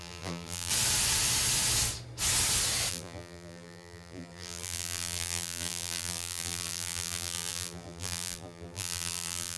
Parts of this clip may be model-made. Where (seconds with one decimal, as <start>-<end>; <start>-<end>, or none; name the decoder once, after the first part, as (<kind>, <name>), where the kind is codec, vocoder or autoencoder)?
0.0-0.7 (vocoder, BigVGAN v2); 2.9-9.6